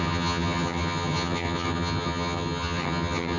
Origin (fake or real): fake